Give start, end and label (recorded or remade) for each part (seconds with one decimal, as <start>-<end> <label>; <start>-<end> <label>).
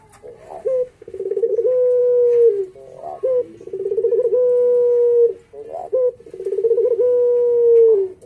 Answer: 0.0-0.6 recorded; 0.6-1.5 remade; 1.5-8.3 recorded